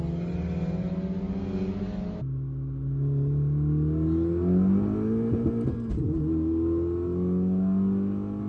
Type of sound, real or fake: real